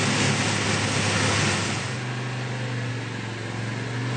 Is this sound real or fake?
real